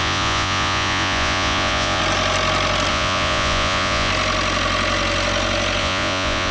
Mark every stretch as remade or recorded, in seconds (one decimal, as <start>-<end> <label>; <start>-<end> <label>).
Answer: 0.0-2.0 remade; 2.0-2.9 recorded; 2.9-4.1 remade; 4.1-5.8 recorded; 5.8-6.5 remade